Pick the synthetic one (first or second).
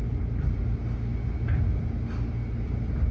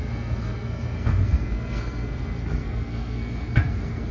second